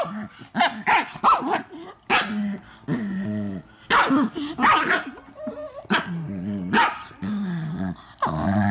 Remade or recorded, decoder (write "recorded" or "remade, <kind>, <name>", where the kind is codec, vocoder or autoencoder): recorded